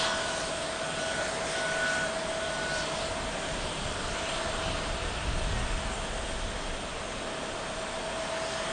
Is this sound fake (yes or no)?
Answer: no